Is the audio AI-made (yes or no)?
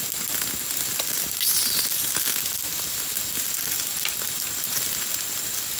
no